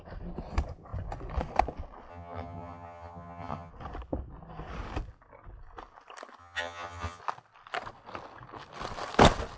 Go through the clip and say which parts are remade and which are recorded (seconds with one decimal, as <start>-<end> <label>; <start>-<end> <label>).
0.0-2.1 recorded; 2.1-3.7 remade; 3.7-6.4 recorded; 6.4-7.2 remade; 7.2-9.6 recorded